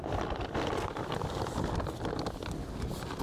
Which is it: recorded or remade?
recorded